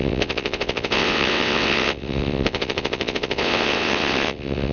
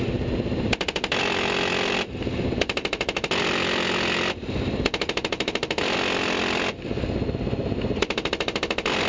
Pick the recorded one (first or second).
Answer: second